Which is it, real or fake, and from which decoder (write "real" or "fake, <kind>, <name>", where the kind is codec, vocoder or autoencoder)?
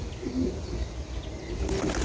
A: real